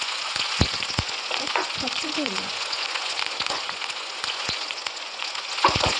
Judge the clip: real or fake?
fake